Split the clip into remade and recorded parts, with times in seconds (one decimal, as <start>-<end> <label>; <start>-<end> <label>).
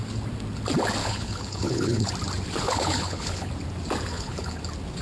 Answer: 0.0-1.0 recorded; 1.0-2.1 remade; 2.1-2.6 recorded; 2.6-3.5 remade; 3.5-4.1 recorded; 4.1-4.6 remade; 4.6-5.0 recorded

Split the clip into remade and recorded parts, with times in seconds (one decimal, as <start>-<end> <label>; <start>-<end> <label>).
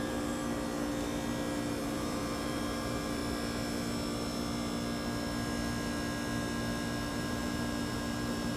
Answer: 0.0-0.4 remade; 0.4-1.7 recorded; 1.7-3.2 remade; 3.2-7.1 recorded; 7.1-8.6 remade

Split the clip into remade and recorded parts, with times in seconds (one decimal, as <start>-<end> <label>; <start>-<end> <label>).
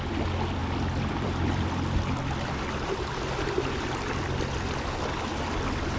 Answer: 0.0-0.6 recorded; 0.6-4.2 remade; 4.2-6.0 recorded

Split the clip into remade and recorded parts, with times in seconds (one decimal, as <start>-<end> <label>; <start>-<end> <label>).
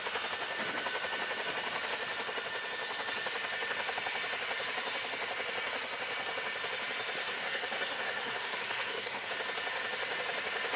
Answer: 0.0-7.2 recorded; 7.2-9.3 remade; 9.3-10.8 recorded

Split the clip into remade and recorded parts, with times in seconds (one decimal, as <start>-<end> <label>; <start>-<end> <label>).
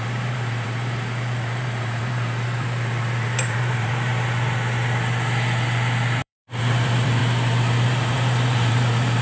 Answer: 0.0-4.1 remade; 4.1-6.2 recorded; 6.2-7.2 remade; 7.2-7.9 recorded; 7.9-9.2 remade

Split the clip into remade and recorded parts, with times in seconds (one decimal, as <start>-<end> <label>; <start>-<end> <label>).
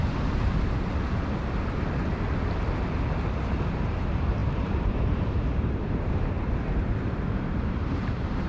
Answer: 0.0-3.4 recorded; 3.4-8.5 remade